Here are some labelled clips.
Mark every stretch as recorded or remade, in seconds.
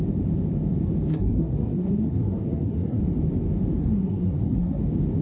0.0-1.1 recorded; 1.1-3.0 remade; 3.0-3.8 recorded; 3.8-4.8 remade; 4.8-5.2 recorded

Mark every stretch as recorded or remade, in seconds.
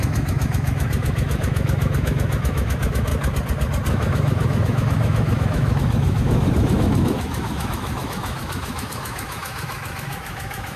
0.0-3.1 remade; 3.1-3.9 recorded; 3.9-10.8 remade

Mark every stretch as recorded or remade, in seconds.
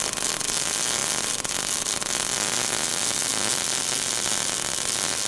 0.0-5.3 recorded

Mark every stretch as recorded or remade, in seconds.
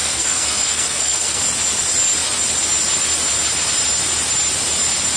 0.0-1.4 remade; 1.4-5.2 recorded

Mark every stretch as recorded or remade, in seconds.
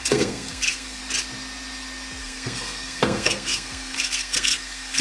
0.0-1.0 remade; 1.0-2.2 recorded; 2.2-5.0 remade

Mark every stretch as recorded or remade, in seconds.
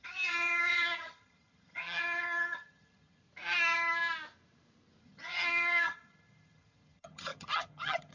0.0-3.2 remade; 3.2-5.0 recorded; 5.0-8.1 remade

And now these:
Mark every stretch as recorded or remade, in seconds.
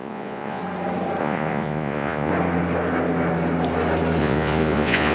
0.0-0.6 remade; 0.6-1.2 recorded; 1.2-2.3 remade; 2.3-4.2 recorded; 4.2-5.1 remade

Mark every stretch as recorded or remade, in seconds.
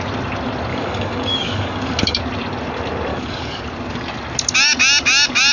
0.0-0.7 recorded; 0.7-2.2 remade; 2.2-3.1 recorded; 3.1-3.6 remade; 3.6-5.5 recorded